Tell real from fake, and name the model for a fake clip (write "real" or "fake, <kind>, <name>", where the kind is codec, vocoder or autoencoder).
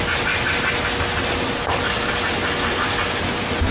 real